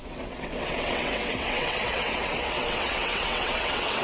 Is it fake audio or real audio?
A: fake